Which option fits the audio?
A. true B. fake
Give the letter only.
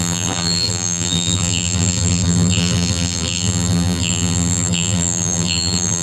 B